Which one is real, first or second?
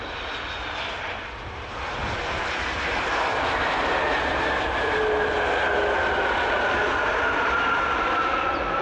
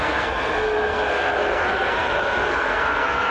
first